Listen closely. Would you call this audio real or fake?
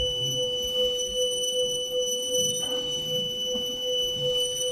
fake